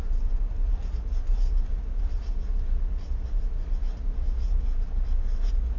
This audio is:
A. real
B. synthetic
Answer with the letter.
A